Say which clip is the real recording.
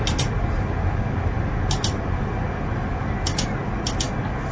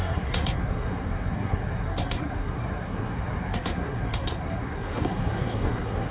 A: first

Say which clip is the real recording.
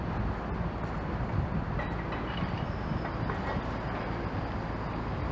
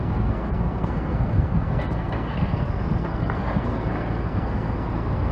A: first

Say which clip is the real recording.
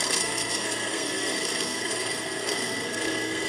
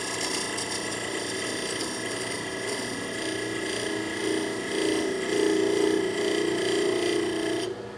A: second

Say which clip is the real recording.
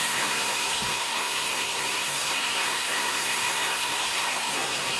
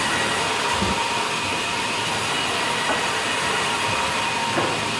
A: second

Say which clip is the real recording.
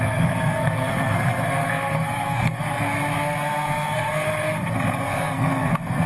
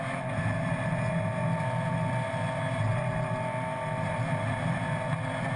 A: second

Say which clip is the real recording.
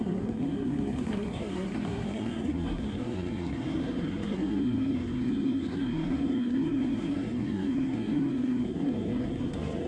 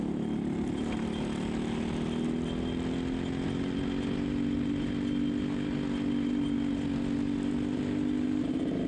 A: second